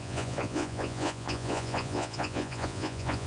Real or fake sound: fake